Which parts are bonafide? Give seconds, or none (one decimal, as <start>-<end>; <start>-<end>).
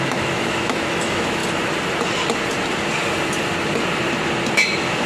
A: 1.4-4.5